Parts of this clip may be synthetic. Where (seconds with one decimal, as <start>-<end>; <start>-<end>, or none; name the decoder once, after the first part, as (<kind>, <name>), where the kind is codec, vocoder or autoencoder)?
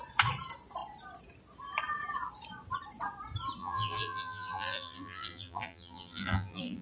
3.6-6.8 (vocoder, BigVGAN v2)